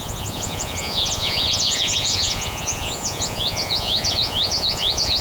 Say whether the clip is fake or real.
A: fake